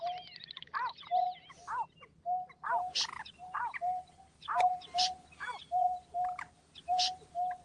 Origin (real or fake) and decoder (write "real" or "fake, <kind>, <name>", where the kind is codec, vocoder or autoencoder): real